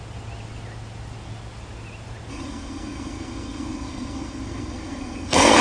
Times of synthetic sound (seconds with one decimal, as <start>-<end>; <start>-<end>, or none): 2.3-5.6